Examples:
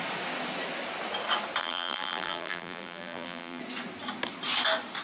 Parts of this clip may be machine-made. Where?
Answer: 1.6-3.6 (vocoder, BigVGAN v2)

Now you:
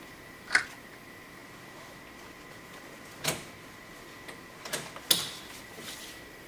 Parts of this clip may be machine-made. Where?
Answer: 0.0-1.4 (vocoder, BigVGAN v2); 5.3-6.5

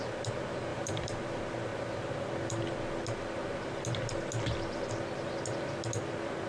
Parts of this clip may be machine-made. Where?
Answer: 0.7-1.2 (vocoder, BigVGAN v2)

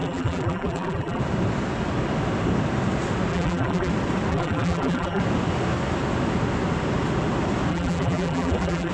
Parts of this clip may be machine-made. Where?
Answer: 0.0-1.2 (vocoder, BigVGAN v2); 3.3-3.9; 4.3-5.2; 7.7-8.9

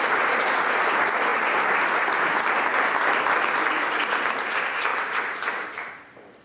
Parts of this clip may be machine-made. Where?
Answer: 4.9-6.4 (vocoder, BigVGAN v2)